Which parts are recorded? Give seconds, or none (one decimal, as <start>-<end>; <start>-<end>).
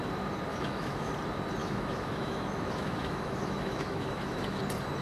0.0-0.5; 1.1-1.6; 4.6-5.0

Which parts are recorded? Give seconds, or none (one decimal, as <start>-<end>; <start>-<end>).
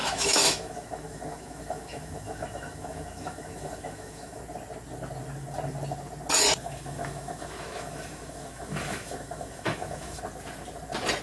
4.4-6.6; 10.2-11.2